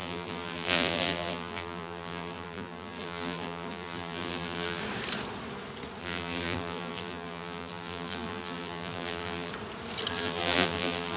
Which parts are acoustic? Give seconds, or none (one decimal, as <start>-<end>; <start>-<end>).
4.8-6.0; 9.5-10.1

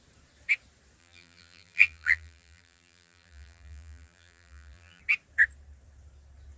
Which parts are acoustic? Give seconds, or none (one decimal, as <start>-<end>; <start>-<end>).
0.0-1.0; 5.0-6.6

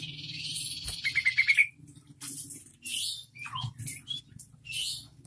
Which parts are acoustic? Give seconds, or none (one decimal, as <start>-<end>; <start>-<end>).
0.0-5.3